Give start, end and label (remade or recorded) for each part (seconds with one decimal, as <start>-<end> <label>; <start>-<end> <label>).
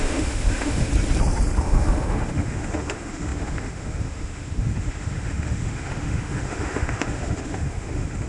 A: 0.0-0.9 remade; 0.9-1.6 recorded; 1.6-8.3 remade